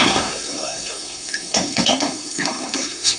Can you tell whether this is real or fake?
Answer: fake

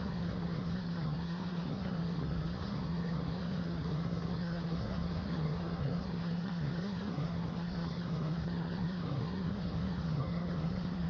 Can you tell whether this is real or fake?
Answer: fake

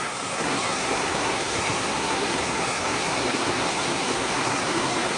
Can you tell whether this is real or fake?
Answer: fake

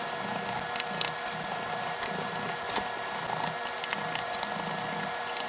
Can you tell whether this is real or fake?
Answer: real